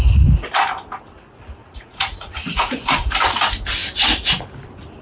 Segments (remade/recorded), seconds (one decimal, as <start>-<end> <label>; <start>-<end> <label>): 0.0-1.6 recorded; 1.6-3.1 remade; 3.1-5.0 recorded